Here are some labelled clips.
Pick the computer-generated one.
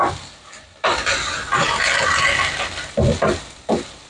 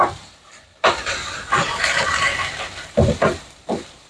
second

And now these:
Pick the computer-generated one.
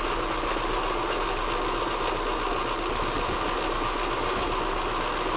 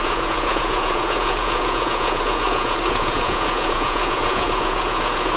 second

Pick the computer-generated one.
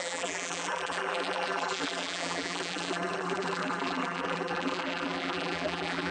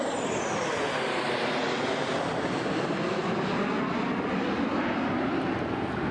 first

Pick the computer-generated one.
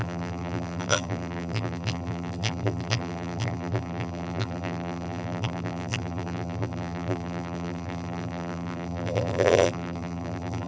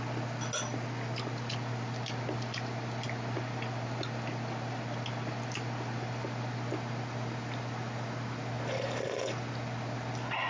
first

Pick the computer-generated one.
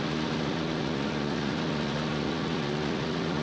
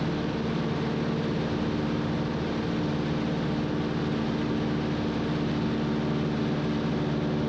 first